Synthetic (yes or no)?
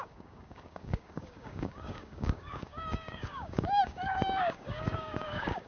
yes